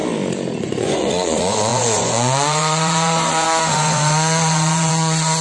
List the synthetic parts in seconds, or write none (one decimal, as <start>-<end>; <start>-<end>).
0.6-5.4